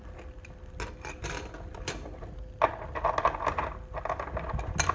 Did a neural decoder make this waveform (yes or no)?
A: no